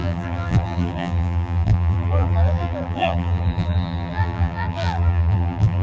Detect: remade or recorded remade